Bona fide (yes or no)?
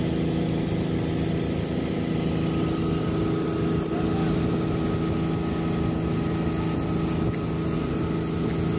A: yes